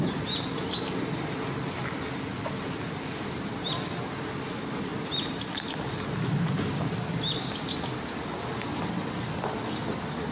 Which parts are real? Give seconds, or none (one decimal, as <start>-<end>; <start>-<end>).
0.0-10.3